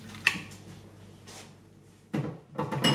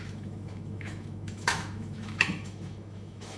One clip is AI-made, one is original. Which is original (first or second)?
first